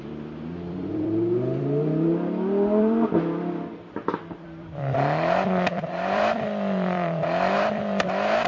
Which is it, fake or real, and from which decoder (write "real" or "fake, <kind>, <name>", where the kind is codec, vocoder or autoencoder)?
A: fake, vocoder, BigVGAN v2